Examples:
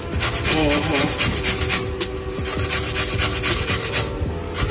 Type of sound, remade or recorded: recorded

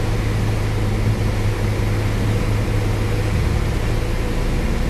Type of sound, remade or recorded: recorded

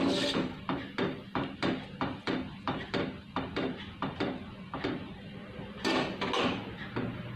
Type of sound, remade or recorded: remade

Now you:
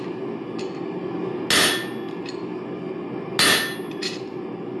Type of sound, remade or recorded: recorded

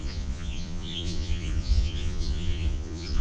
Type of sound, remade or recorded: remade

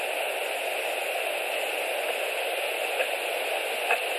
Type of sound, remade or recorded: recorded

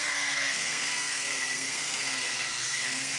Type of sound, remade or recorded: remade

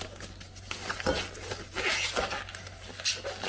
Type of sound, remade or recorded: recorded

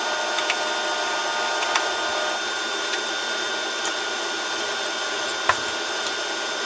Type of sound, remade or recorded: recorded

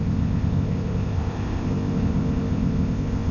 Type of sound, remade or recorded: remade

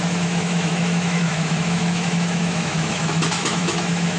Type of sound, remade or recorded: remade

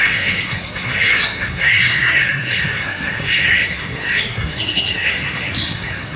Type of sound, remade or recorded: remade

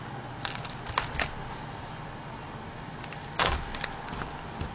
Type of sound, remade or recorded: recorded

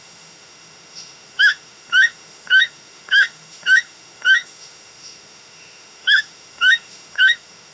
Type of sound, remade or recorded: remade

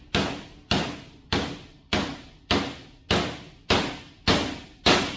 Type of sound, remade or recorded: recorded